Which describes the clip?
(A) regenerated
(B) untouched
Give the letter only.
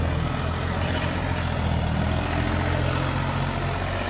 B